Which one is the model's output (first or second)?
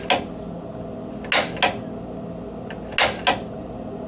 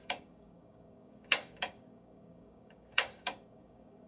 second